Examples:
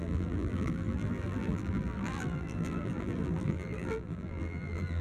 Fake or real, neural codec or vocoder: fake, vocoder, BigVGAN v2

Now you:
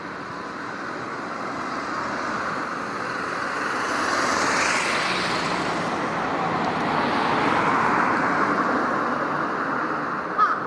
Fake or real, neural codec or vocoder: real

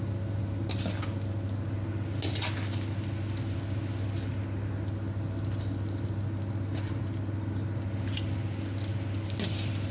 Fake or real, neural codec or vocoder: real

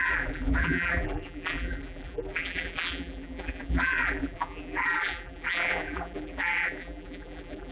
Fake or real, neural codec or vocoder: fake, vocoder, BigVGAN v2